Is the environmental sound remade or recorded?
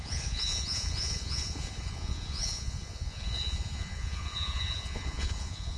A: remade